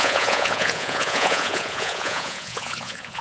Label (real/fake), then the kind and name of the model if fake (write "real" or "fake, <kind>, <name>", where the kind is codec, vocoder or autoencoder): fake, vocoder, Vocos